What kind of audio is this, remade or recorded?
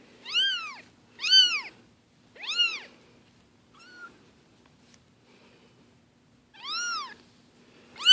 recorded